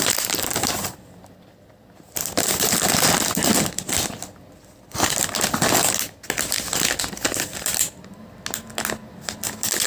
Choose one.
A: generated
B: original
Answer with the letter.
B